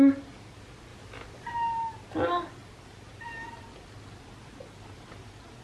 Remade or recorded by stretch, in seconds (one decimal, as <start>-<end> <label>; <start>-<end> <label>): 0.0-0.9 recorded; 0.9-1.5 remade; 1.5-2.6 recorded; 2.6-3.6 remade; 3.6-5.6 recorded